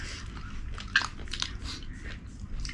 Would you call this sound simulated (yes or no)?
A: no